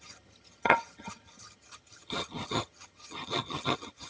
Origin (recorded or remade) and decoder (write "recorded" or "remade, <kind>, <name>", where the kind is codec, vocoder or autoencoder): remade, vocoder, HiFi-GAN